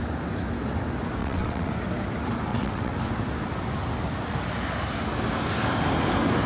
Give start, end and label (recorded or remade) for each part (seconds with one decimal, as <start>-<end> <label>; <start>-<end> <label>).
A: 0.0-1.2 recorded; 1.2-1.7 remade; 1.7-2.5 recorded; 2.5-3.0 remade; 3.0-6.5 recorded